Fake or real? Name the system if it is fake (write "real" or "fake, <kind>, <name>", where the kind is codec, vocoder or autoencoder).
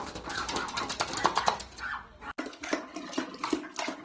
real